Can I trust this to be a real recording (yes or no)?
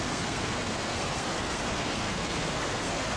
no